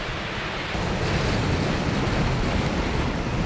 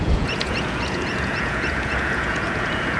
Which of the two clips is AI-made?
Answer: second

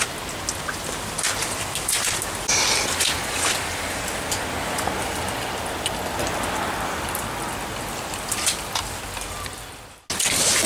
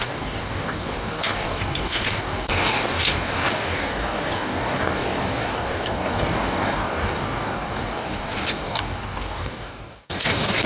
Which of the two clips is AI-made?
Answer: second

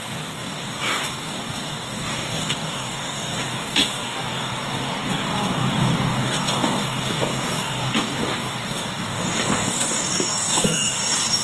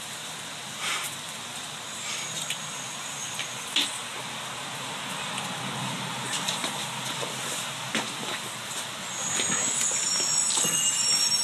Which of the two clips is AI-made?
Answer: first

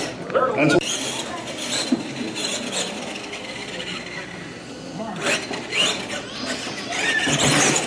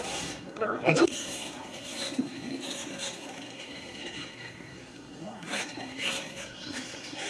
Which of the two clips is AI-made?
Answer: second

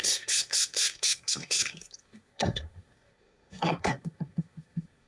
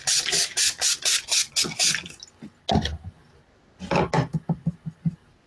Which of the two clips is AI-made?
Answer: first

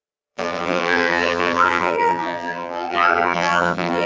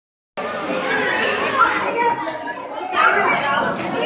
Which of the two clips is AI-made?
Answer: first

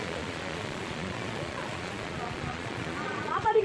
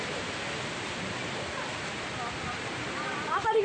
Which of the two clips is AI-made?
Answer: first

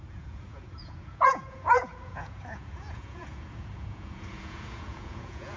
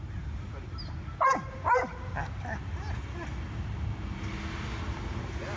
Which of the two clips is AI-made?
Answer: first